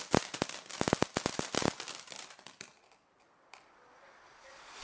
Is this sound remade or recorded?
recorded